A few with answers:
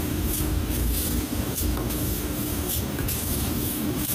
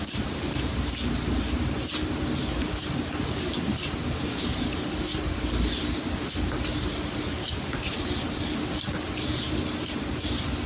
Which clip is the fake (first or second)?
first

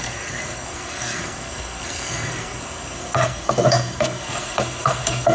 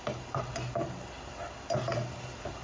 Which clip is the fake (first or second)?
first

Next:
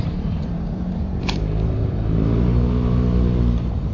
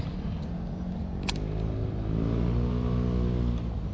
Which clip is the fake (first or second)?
first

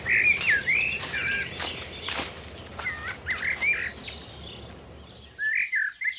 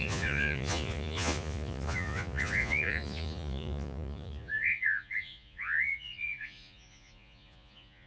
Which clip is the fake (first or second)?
second